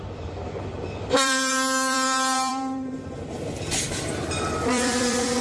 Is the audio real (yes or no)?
no